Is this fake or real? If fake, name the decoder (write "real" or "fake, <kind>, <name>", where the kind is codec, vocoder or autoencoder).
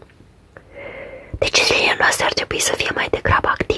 real